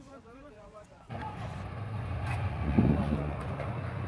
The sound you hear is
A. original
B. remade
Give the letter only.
B